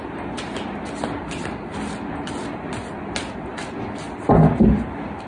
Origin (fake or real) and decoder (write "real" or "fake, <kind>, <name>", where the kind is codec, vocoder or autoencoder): real